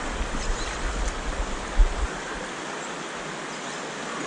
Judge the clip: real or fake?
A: real